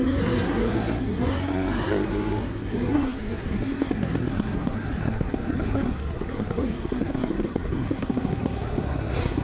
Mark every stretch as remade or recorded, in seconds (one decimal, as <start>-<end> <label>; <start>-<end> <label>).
0.0-9.4 remade